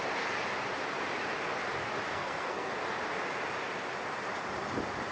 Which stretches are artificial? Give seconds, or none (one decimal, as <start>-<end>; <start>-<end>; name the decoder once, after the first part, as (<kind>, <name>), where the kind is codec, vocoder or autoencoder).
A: 2.1-2.7 (codec, SNAC)